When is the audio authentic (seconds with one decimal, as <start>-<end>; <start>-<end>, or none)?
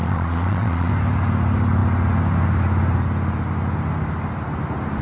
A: 0.9-5.0